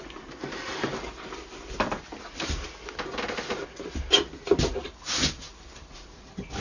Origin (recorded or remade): recorded